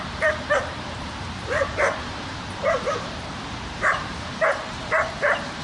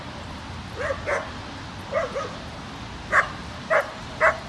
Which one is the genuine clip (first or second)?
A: second